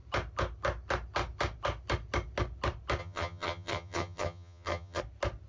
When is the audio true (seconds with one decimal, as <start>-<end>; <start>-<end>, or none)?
0.0-3.0; 5.0-5.5